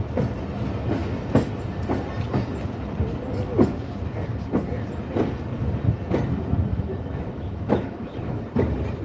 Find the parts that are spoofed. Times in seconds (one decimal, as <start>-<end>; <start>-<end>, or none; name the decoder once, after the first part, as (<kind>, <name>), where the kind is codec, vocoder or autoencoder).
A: 6.7-8.4 (autoencoder, DAC-VAE)